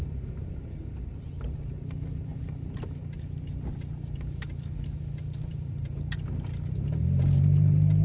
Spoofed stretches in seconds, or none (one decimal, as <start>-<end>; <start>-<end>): 0.0-8.0